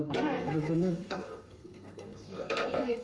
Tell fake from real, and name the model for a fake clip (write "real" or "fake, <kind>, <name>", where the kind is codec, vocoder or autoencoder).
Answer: fake, codec, SNAC